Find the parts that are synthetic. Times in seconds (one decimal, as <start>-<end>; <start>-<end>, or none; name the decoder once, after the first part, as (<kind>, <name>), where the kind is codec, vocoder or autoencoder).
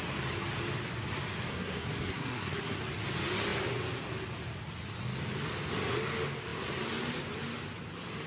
1.5-2.8 (codec, SNAC)